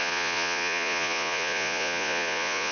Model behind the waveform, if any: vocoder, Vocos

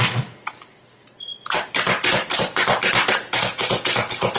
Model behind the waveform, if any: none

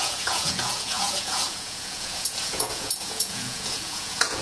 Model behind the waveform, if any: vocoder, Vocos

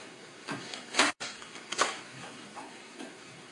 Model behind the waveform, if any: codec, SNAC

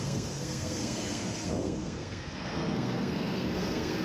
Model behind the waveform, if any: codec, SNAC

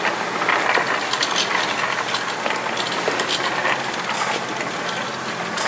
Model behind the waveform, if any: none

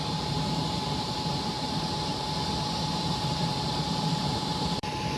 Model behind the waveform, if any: vocoder, BigVGAN v2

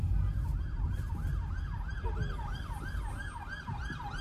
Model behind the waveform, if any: none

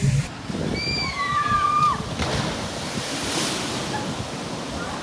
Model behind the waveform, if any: none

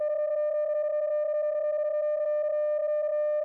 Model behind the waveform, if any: none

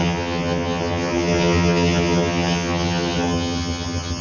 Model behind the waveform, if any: vocoder, HiFi-GAN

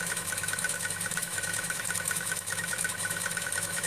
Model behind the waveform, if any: autoencoder, DAC-VAE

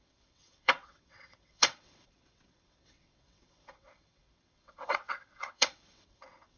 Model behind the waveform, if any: vocoder, WaveNeXt